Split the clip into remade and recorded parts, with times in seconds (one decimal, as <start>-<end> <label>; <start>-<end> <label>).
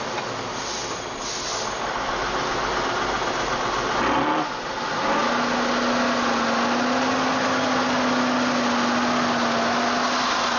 0.0-10.6 recorded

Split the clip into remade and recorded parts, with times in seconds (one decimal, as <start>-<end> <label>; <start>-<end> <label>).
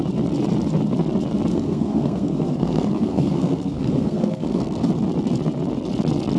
0.0-1.5 recorded; 1.5-4.9 remade; 4.9-6.4 recorded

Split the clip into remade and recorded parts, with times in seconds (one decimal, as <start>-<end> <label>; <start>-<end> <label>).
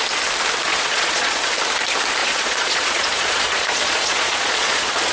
0.0-0.7 recorded; 0.7-1.4 remade; 1.4-2.2 recorded; 2.2-5.1 remade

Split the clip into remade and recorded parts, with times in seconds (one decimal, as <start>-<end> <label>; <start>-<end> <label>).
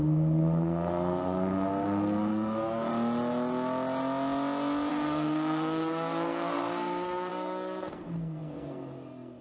0.0-2.9 remade; 2.9-4.9 recorded; 4.9-9.4 remade